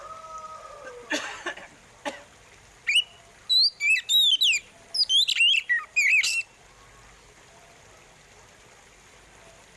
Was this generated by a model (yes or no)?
no